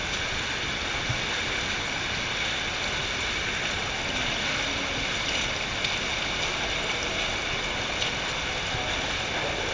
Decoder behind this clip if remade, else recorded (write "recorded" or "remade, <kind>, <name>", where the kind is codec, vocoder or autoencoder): recorded